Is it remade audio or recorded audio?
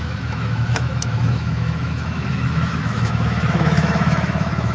remade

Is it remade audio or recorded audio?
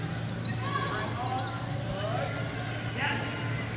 recorded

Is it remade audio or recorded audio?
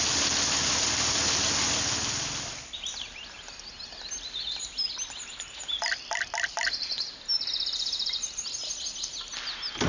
recorded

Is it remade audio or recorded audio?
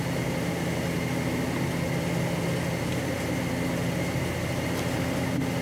recorded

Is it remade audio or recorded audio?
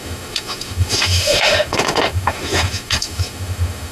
remade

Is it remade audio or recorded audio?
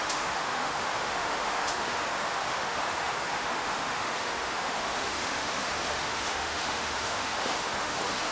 remade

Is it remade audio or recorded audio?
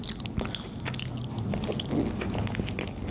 recorded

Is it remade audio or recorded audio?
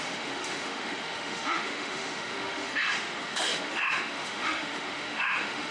remade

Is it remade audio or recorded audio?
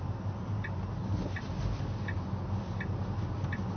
recorded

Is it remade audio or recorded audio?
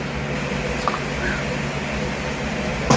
recorded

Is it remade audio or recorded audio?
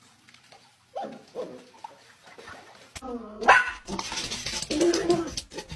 recorded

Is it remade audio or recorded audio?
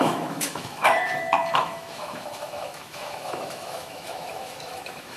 remade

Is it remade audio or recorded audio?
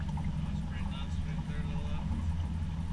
recorded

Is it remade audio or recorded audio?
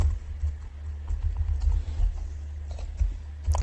recorded